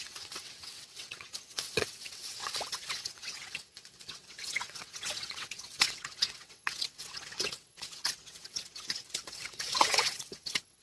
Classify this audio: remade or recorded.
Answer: remade